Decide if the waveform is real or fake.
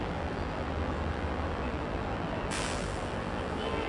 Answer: fake